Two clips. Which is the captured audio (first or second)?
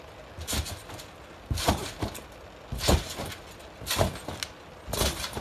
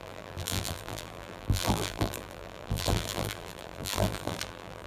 first